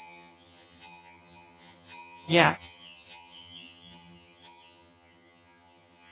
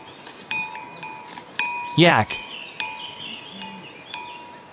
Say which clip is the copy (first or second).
first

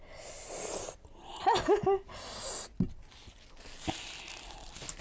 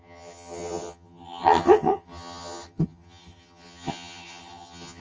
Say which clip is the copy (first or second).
second